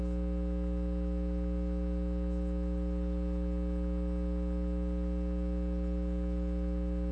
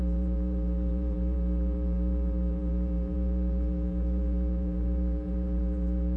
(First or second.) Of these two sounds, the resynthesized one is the second